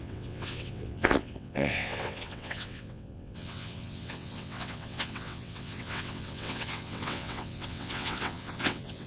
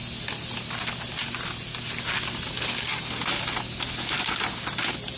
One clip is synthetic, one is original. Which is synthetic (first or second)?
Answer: first